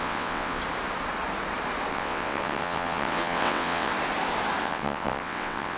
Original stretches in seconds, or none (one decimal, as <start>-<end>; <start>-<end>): 0.6-1.9; 3.9-4.6